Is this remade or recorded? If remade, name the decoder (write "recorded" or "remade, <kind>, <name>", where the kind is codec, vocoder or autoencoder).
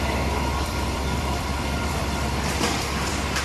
remade, vocoder, BigVGAN v2